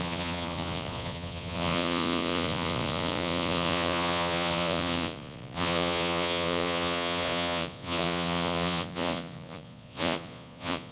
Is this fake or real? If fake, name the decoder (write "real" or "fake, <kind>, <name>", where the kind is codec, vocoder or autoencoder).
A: fake, vocoder, Vocos